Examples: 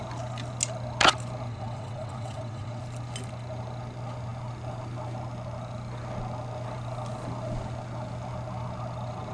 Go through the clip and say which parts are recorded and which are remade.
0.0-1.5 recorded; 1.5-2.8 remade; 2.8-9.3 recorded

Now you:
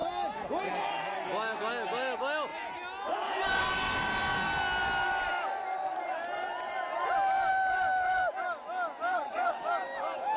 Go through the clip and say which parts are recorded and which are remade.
0.0-9.1 recorded; 9.1-9.7 remade; 9.7-10.4 recorded

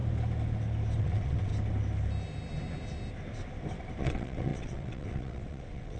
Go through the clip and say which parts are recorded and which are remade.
0.0-1.0 recorded; 1.0-1.5 remade; 1.5-4.0 recorded; 4.0-6.0 remade

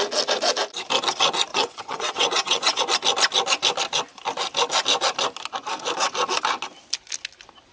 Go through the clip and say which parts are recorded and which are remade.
0.0-1.5 recorded; 1.5-2.8 remade; 2.8-7.7 recorded